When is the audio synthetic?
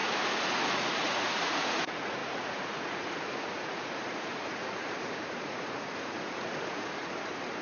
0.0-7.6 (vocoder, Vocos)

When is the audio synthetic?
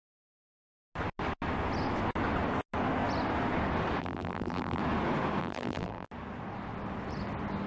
4.0-4.8 (vocoder, BigVGAN v2); 5.4-6.1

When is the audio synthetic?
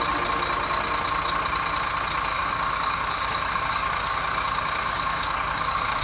2.3-6.0 (codec, DAC)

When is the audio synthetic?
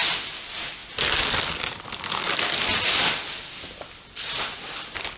none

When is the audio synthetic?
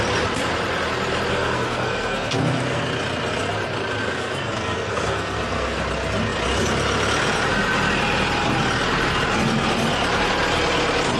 1.3-2.8 (codec, SNAC); 4.0-5.8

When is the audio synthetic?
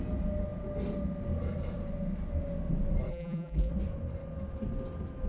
3.1-3.7 (vocoder, BigVGAN v2)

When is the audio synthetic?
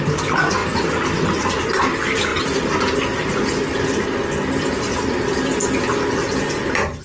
none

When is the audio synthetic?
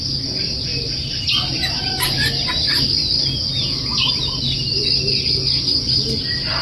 none